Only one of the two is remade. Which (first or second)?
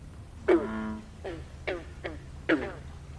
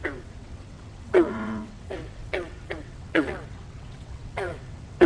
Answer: second